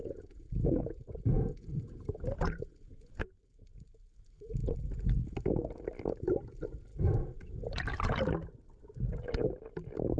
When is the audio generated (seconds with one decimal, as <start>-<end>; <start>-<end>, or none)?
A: 0.0-3.3